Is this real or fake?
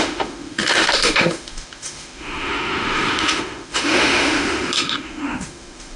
fake